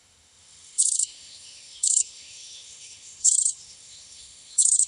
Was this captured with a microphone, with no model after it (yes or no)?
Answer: no